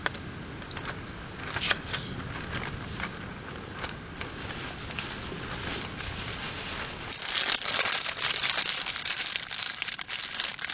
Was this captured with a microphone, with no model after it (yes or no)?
yes